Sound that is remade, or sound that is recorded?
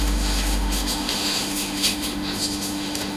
remade